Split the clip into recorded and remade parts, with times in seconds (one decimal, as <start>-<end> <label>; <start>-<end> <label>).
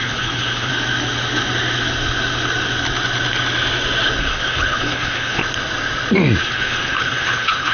0.0-0.7 remade; 0.7-4.2 recorded; 4.2-5.4 remade; 5.4-6.4 recorded; 6.4-7.7 remade